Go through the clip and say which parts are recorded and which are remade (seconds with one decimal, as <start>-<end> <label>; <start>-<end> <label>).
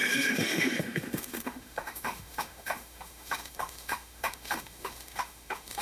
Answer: 0.0-5.8 remade